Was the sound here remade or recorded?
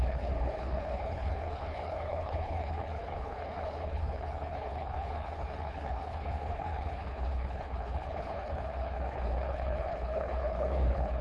remade